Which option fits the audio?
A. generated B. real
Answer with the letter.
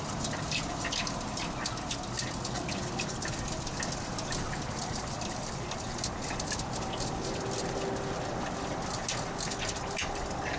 B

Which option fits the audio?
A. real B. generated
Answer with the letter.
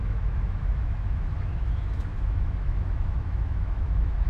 B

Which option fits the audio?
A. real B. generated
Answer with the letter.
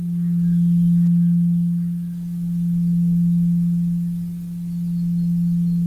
A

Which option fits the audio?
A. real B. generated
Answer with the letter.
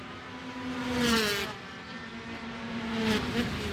A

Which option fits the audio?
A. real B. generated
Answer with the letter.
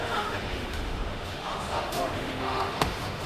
B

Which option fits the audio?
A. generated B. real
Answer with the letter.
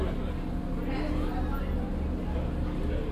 B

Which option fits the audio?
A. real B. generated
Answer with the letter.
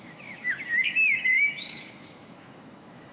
B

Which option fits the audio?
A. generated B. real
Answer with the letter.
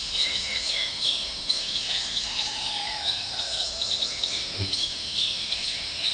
A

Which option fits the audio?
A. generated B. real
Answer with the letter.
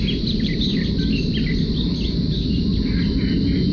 B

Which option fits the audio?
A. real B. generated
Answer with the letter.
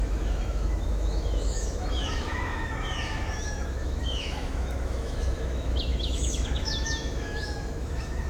B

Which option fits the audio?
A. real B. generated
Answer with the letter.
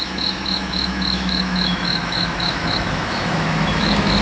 B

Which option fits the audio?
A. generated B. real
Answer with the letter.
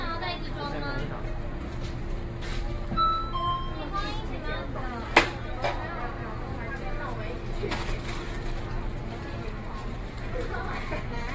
B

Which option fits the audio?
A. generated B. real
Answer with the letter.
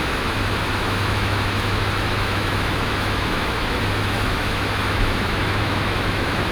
A